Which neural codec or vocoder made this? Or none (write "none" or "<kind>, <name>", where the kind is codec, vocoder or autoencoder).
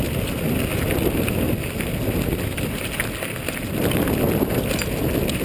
none